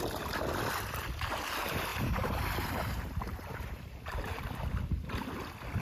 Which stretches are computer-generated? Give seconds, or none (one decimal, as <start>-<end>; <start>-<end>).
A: 1.9-4.4

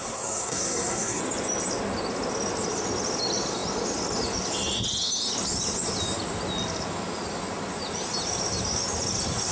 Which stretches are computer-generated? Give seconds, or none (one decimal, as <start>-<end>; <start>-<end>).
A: 0.0-1.2